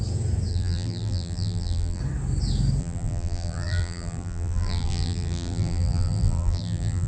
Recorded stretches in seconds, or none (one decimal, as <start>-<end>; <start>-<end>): 0.0-0.5; 2.0-2.8

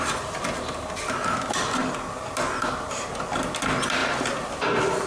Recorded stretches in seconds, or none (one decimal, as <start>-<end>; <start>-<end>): 0.0-5.1